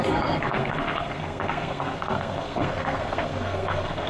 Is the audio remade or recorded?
remade